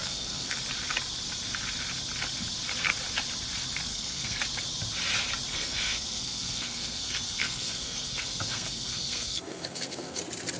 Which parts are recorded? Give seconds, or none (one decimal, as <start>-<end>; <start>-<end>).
0.5-3.9; 4.4-5.5; 10.2-10.6

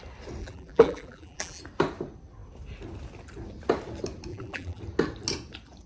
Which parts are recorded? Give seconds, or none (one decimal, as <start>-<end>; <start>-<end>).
0.0-0.4; 1.6-4.3; 4.8-5.9

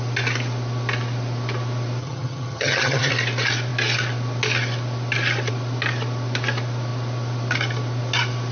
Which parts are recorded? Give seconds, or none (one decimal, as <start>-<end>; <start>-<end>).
0.0-2.0; 3.1-8.5